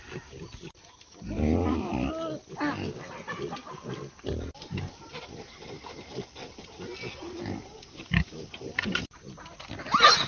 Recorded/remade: recorded